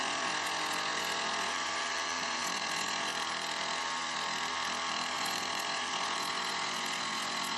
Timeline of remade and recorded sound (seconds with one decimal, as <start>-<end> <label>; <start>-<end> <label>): 0.0-3.1 remade; 3.1-5.1 recorded; 5.1-7.6 remade